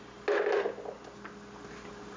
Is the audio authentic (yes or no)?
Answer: yes